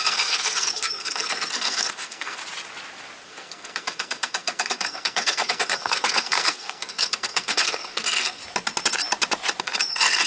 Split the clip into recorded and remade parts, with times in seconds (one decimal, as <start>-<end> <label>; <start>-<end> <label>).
0.0-2.4 remade; 2.4-3.3 recorded; 3.3-8.4 remade; 8.4-9.6 recorded; 9.6-10.3 remade